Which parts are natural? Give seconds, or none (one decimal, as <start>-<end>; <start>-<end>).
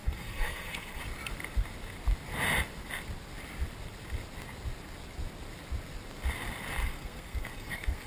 1.0-6.8